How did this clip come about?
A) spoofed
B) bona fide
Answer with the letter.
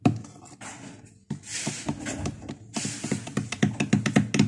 B